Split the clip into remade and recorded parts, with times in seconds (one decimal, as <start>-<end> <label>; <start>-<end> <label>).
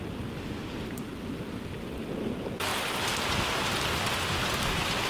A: 0.0-5.1 recorded